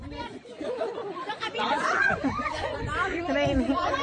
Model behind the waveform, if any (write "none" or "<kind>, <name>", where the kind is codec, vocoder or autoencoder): vocoder, Vocos